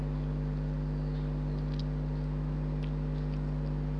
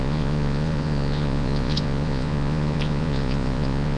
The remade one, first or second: second